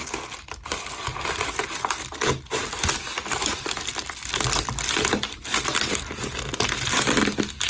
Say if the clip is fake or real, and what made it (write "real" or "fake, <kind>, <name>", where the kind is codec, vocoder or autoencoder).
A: real